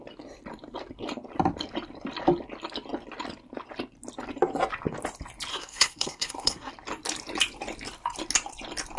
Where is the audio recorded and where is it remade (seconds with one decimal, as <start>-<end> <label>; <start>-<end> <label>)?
0.0-5.5 recorded; 5.5-6.7 remade; 6.7-9.0 recorded